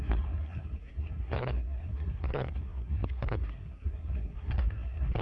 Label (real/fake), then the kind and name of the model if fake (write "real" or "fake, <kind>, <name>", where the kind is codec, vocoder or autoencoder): fake, codec, SNAC